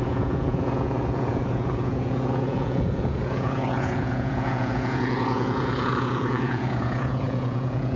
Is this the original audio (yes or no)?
no